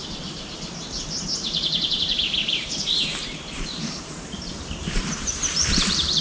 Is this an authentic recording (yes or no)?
no